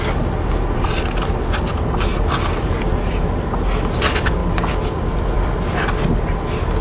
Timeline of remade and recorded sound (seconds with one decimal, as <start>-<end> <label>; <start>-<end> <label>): 0.0-4.4 recorded; 4.4-6.2 remade; 6.2-6.8 recorded